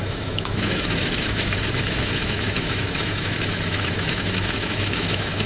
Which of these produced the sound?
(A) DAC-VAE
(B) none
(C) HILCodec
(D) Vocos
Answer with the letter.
A